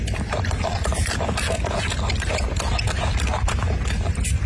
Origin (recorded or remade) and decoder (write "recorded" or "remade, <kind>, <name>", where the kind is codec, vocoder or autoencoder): recorded